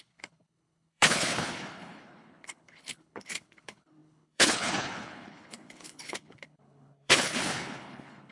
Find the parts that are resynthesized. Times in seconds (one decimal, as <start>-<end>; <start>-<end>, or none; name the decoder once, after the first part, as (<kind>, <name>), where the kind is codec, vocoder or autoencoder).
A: 0.0-8.3 (codec, HILCodec)